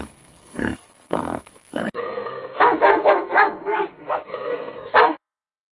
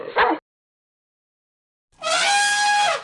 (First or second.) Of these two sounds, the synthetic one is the first